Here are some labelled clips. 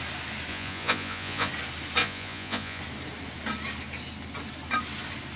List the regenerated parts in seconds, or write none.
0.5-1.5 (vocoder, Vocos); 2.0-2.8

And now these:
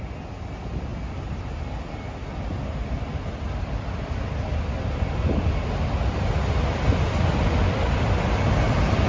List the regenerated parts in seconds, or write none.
none

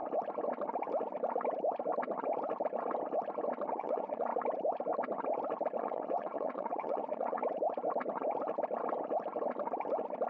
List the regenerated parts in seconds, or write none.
3.7-4.3 (vocoder, Vocos); 5.8-7.4

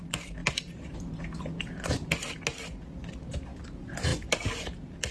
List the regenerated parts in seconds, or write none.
none

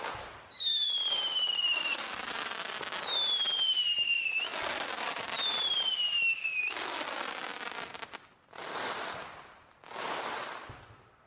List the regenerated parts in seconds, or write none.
none